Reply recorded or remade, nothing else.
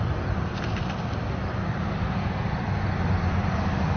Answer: recorded